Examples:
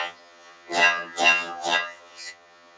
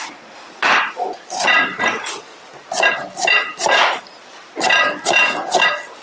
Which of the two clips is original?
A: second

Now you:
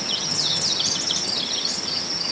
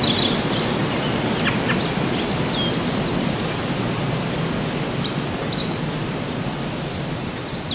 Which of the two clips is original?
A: second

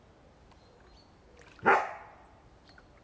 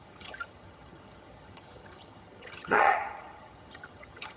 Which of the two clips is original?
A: first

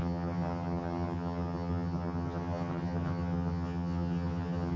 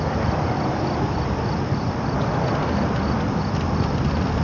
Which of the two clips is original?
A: second